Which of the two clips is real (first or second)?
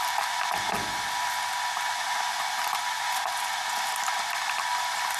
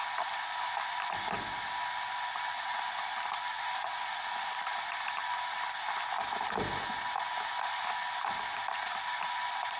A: first